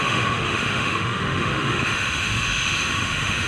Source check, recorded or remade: remade